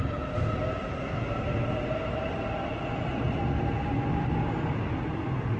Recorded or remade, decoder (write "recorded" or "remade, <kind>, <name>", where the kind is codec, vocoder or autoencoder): recorded